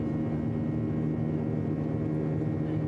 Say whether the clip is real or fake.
real